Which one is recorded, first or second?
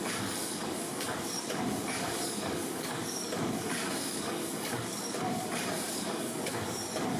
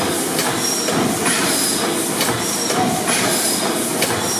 second